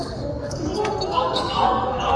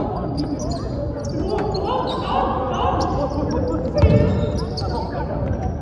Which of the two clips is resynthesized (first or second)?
first